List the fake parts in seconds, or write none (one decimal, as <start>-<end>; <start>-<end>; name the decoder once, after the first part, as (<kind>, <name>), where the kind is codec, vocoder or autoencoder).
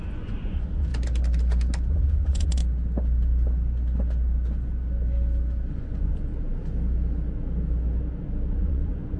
0.0-0.9 (vocoder, Vocos); 1.9-2.6; 5.7-6.3; 8.5-9.2